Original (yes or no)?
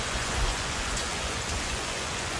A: no